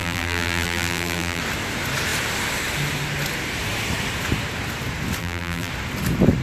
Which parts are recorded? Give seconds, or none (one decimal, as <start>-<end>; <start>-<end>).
1.4-5.2; 5.7-6.4